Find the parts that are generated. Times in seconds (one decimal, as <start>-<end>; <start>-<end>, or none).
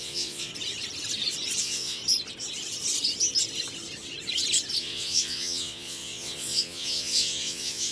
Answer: 0.0-0.5; 1.6-2.0; 4.8-7.9